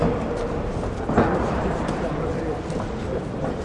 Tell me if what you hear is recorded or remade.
recorded